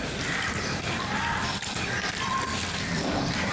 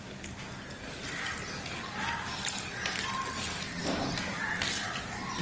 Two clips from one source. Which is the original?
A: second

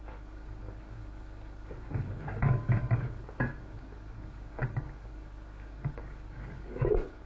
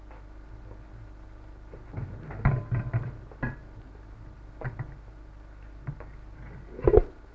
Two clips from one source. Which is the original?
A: second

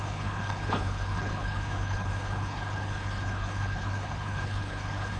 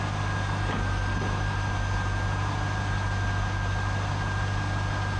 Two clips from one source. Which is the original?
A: second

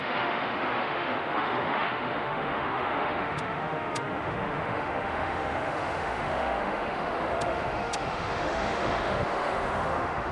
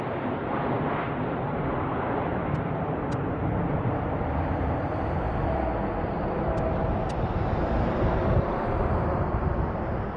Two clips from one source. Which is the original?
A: second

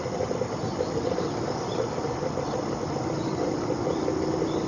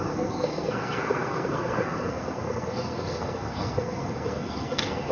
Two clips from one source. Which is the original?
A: first